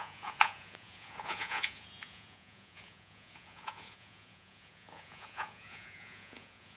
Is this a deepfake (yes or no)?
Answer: yes